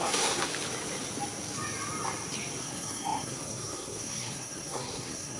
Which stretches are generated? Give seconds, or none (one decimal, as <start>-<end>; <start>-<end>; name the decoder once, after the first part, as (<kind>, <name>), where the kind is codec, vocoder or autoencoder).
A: 0.0-0.5 (codec, SNAC); 2.6-5.4